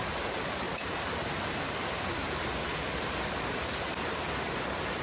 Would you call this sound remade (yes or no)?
yes